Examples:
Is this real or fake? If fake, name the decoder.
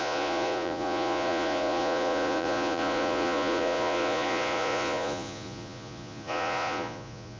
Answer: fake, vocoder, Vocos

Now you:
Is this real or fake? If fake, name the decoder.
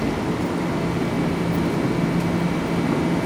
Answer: real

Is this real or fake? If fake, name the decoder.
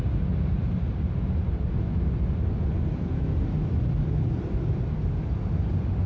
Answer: real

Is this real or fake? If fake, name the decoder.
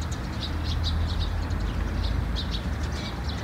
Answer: real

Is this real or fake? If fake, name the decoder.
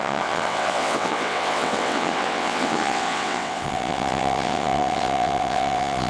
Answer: fake, vocoder, WaveNeXt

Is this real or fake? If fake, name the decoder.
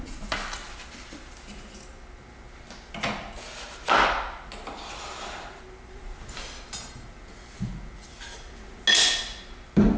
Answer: real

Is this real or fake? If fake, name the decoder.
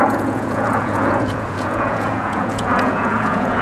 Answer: fake, vocoder, Vocos